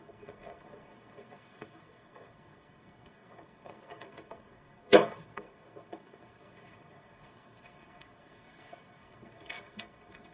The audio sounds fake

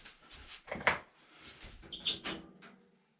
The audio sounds real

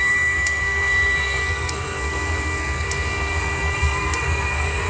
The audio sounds fake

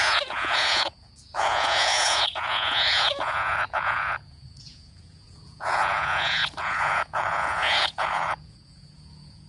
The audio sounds fake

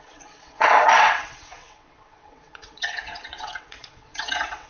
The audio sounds fake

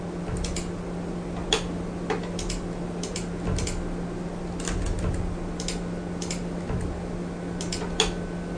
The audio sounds real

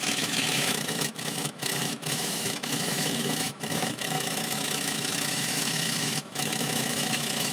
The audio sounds fake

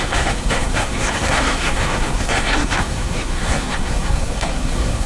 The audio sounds fake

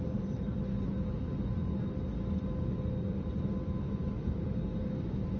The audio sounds real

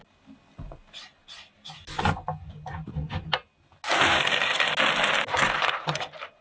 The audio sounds real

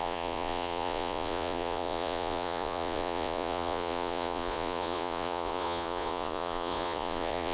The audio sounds fake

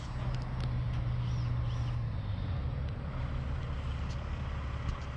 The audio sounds real